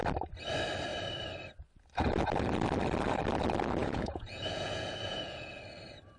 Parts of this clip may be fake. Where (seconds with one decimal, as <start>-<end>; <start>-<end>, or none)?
3.8-5.6